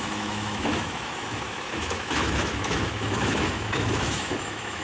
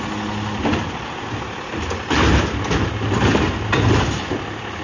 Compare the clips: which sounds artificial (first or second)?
first